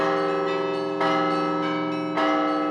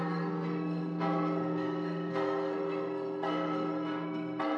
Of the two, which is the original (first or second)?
first